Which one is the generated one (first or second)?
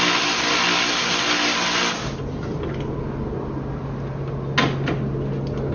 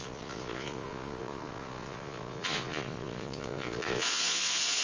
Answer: second